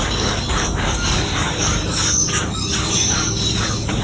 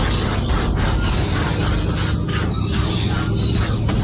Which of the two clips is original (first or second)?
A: second